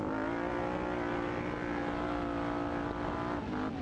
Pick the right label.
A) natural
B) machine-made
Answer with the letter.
A